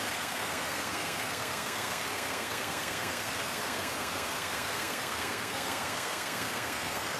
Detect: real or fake fake